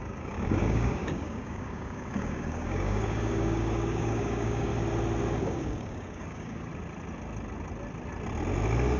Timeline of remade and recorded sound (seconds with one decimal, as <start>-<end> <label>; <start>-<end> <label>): 0.0-4.7 remade; 4.7-5.4 recorded; 5.4-6.7 remade; 6.7-9.0 recorded